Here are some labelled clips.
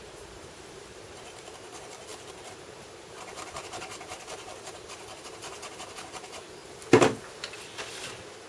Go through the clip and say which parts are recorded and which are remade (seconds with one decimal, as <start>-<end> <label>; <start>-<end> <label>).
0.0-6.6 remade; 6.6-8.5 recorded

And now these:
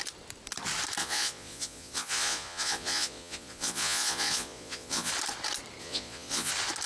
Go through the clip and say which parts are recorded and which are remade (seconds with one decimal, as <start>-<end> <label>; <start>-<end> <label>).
0.0-1.0 recorded; 1.0-5.1 remade; 5.1-5.8 recorded; 5.8-6.5 remade; 6.5-6.9 recorded

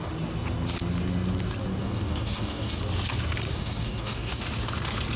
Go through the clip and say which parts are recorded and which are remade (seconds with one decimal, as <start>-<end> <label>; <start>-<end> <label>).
0.0-1.8 recorded; 1.8-2.8 remade; 2.8-3.5 recorded; 3.5-4.4 remade; 4.4-5.2 recorded

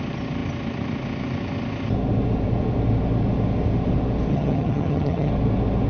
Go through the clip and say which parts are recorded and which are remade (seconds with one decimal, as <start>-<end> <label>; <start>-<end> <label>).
0.0-4.3 recorded; 4.3-5.3 remade; 5.3-5.9 recorded